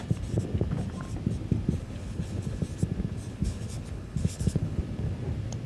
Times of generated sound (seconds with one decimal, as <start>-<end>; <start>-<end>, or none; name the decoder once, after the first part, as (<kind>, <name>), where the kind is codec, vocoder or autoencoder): 1.8-2.6 (codec, HILCodec); 3.3-4.8